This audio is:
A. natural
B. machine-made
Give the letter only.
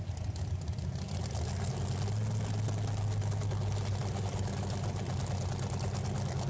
A